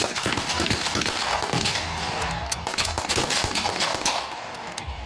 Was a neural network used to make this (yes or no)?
yes